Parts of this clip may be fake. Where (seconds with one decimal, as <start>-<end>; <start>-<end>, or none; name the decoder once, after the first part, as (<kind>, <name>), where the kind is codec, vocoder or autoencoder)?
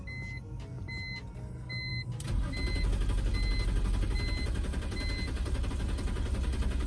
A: none